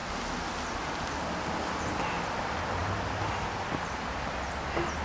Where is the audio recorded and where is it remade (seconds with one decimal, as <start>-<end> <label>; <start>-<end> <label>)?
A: 0.0-5.0 recorded